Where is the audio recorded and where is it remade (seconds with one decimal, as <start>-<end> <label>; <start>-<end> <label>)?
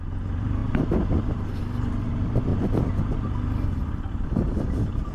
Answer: 0.0-2.5 remade; 2.5-4.1 recorded; 4.1-5.1 remade